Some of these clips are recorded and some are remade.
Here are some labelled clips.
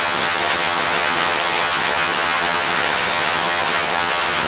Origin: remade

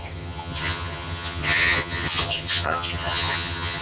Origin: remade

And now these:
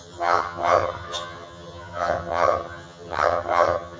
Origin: remade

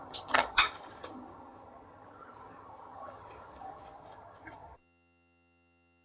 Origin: remade